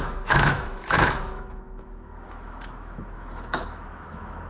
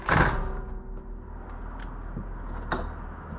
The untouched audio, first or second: second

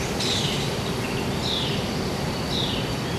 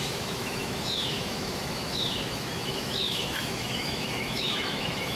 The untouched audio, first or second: first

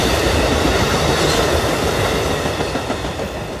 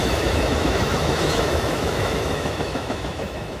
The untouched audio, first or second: first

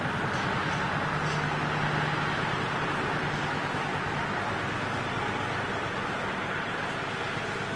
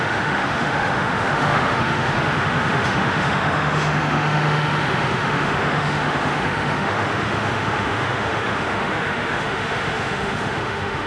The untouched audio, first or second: first